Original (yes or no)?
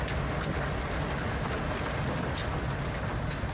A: yes